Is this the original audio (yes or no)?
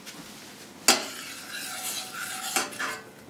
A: yes